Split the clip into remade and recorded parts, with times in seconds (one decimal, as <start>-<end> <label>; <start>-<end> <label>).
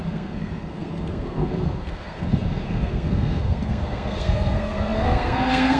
0.0-5.8 remade